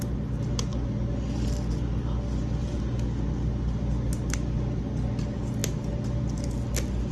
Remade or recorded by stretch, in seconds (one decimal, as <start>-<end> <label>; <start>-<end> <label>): 0.0-7.1 recorded